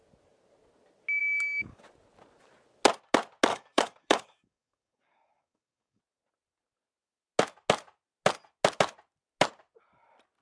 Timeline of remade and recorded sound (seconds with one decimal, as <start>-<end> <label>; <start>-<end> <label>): 0.0-1.2 recorded; 1.2-1.8 remade; 1.8-3.5 recorded; 3.5-6.0 remade; 6.0-10.4 recorded